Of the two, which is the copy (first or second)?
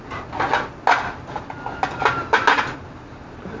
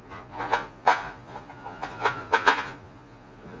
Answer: second